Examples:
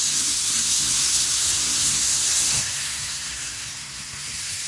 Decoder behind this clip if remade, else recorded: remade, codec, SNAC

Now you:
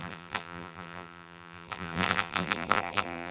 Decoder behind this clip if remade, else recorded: remade, vocoder, BigVGAN v2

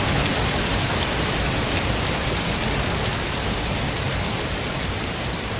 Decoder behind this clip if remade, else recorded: recorded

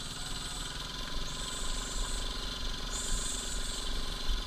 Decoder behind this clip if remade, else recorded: recorded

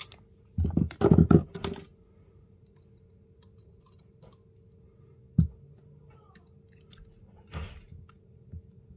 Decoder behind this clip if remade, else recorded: recorded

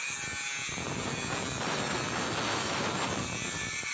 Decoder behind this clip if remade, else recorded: recorded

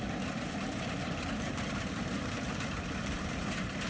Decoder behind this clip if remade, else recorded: remade, vocoder, BigVGAN v2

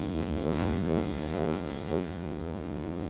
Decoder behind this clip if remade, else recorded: remade, vocoder, Vocos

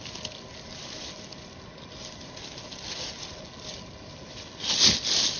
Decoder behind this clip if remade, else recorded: recorded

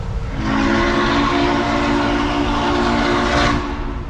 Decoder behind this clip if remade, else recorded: recorded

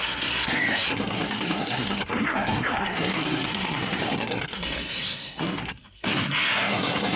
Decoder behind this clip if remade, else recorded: remade, codec, SNAC